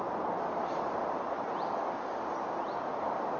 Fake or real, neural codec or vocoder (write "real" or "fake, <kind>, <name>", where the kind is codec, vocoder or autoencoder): real